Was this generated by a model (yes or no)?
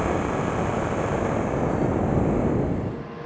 no